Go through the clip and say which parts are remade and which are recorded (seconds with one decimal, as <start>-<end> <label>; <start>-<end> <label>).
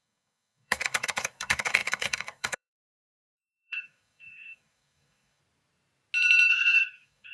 0.0-5.4 remade; 5.4-6.5 recorded; 6.5-7.3 remade